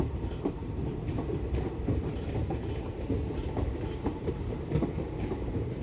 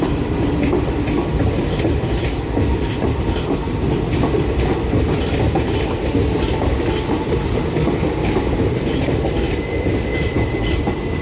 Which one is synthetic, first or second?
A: first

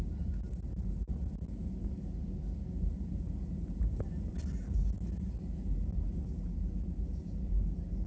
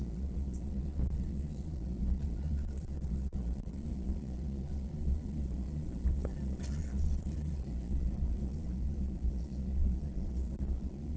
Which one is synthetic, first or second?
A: second